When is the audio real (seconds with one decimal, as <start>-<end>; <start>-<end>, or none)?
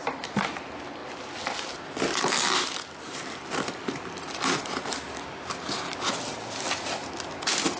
0.0-7.8